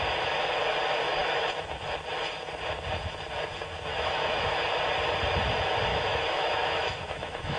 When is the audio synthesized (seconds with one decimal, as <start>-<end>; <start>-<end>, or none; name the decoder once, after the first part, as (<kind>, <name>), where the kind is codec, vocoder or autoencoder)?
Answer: 3.9-4.6 (autoencoder, DAC-VAE); 5.9-7.6